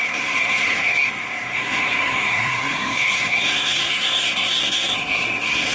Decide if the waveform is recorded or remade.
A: remade